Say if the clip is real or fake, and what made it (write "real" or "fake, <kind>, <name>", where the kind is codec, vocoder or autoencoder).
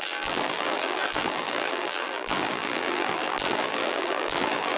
fake, vocoder, BigVGAN v2